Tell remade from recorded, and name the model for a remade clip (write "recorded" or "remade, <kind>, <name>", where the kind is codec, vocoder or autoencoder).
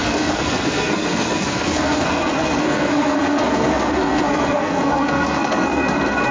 remade, codec, SNAC